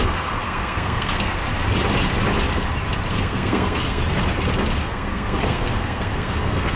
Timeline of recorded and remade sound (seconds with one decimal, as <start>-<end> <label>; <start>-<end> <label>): 0.0-1.4 remade; 1.4-3.1 recorded; 3.1-4.0 remade; 4.0-4.8 recorded; 4.8-6.8 remade